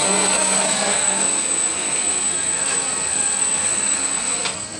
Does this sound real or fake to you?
fake